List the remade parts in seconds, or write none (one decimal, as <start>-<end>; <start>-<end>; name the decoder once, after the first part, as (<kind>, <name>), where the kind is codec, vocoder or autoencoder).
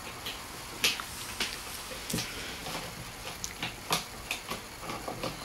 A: none